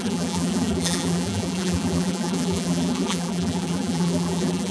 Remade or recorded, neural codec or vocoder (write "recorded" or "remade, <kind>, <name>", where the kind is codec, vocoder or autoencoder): remade, vocoder, BigVGAN v2